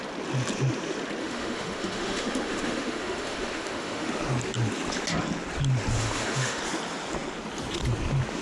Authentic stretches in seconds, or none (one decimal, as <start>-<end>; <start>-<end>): 0.0-1.2; 4.1-6.0; 6.6-8.4